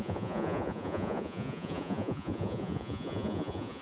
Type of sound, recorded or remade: remade